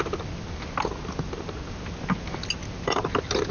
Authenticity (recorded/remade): recorded